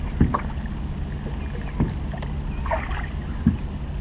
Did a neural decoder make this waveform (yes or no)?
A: no